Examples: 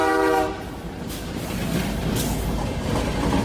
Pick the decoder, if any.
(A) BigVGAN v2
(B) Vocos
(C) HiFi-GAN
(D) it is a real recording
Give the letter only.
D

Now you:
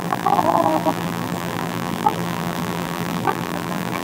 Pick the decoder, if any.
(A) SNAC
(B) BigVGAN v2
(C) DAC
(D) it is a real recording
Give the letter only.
B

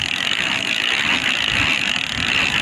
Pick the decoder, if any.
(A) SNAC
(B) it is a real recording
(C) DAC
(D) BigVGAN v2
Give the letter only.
B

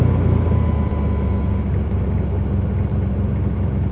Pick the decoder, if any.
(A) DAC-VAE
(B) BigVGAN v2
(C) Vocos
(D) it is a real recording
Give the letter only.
D